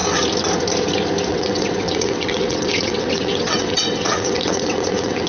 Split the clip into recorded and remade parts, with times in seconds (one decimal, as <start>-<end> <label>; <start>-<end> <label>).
0.0-1.3 recorded; 1.3-5.3 remade